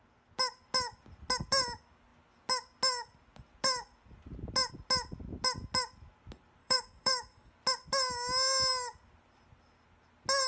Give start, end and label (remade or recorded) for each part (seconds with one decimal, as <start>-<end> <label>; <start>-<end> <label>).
0.0-6.6 recorded; 6.6-7.5 remade; 7.5-10.5 recorded